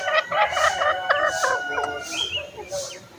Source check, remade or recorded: recorded